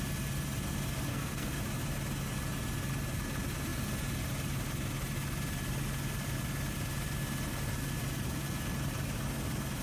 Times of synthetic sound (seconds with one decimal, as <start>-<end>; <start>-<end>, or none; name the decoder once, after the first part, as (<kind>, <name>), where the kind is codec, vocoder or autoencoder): 1.1-1.6 (codec, SNAC)